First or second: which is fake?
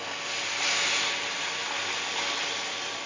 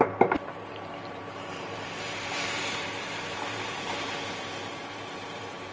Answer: second